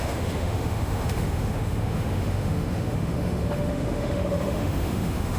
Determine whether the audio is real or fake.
fake